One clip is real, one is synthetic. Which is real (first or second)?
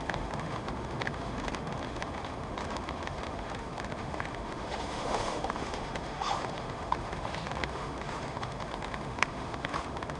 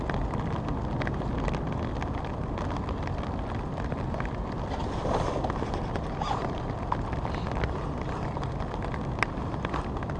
second